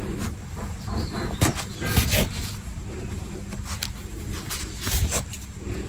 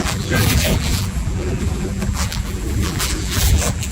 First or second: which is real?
first